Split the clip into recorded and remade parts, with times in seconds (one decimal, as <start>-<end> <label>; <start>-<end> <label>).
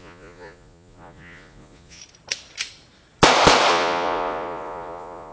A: 0.0-2.0 remade; 2.0-3.7 recorded; 3.7-5.3 remade